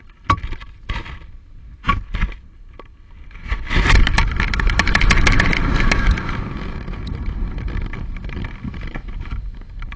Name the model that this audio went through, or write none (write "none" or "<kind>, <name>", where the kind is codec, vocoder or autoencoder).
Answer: none